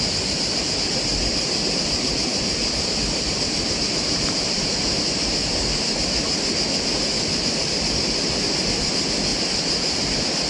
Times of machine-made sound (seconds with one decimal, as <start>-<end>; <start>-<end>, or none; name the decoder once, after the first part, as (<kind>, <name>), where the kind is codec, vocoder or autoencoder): none